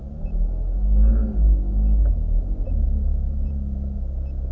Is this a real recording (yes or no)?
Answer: yes